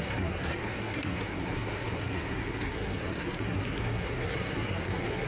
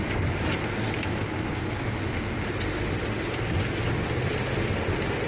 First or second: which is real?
second